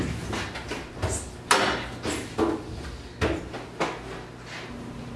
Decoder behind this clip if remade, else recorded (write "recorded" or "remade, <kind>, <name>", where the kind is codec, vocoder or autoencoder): recorded